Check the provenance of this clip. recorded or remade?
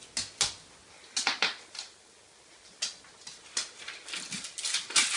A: recorded